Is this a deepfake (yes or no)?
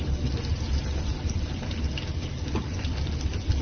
no